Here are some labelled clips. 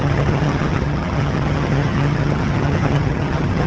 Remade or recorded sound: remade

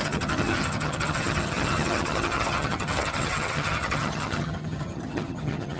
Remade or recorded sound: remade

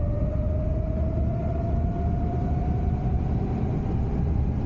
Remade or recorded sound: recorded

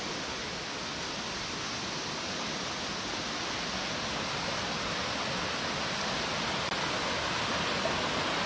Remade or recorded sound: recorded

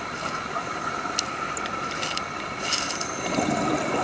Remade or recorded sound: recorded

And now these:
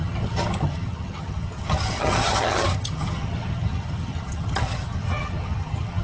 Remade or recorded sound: remade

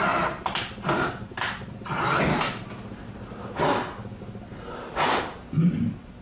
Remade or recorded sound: recorded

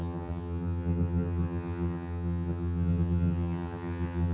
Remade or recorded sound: remade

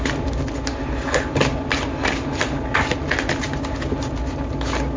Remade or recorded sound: recorded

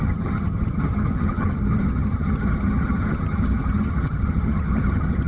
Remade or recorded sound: remade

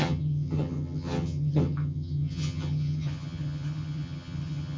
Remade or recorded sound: remade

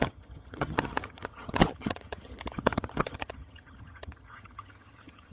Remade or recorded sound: remade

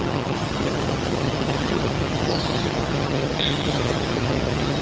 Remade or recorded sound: remade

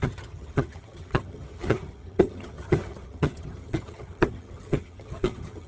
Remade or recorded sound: remade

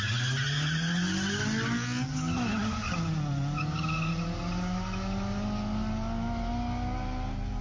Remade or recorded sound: recorded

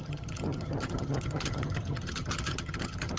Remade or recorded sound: remade